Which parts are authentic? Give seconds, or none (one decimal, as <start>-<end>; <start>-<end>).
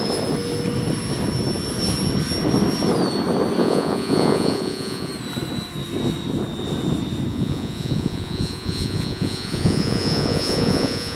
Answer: 0.0-3.6; 5.1-7.3